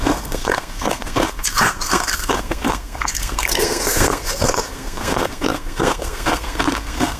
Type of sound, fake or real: fake